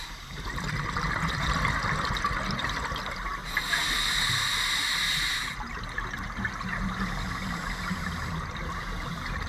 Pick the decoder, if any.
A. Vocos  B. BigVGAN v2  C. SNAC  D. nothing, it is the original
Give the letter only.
D